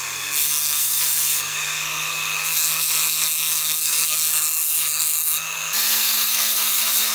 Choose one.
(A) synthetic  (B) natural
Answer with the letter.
A